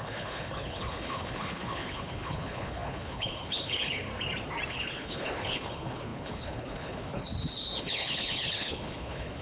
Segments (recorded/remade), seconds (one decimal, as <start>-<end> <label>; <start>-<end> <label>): 0.0-4.1 remade; 4.1-4.7 recorded; 4.7-7.2 remade; 7.2-7.8 recorded; 7.8-9.4 remade

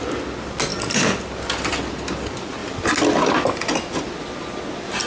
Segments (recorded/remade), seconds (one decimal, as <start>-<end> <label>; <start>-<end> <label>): 0.0-5.1 recorded